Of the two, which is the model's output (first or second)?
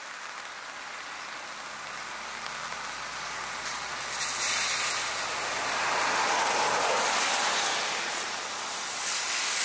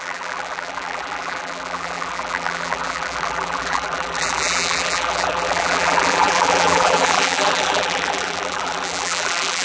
second